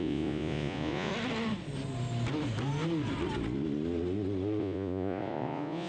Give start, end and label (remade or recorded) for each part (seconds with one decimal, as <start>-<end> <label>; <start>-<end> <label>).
0.0-1.1 remade; 1.1-4.6 recorded; 4.6-5.9 remade